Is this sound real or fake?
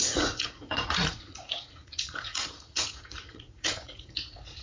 fake